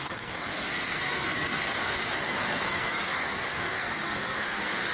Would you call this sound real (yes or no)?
no